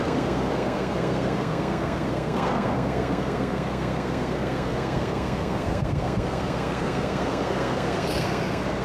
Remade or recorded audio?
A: remade